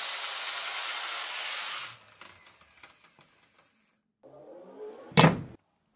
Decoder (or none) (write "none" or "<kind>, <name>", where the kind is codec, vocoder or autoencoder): none